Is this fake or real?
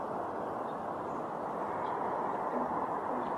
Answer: real